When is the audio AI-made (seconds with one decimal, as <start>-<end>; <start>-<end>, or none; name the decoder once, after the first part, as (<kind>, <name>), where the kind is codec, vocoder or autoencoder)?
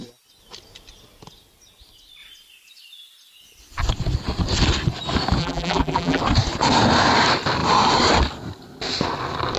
5.4-6.2 (vocoder, BigVGAN v2)